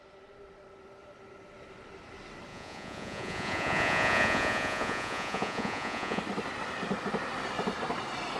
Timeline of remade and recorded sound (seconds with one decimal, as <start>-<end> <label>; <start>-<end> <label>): 0.0-2.5 recorded; 2.5-6.2 remade; 6.2-8.4 recorded